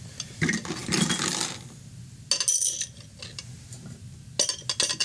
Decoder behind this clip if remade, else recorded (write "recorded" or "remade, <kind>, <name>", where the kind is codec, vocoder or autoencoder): recorded